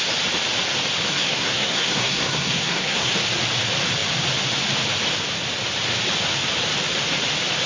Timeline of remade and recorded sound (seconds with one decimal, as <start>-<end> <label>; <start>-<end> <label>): 0.0-1.1 recorded; 1.1-3.1 remade; 3.1-7.7 recorded